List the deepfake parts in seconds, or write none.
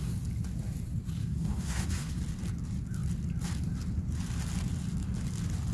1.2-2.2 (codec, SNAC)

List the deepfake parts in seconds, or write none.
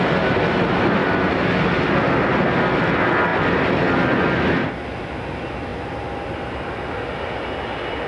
none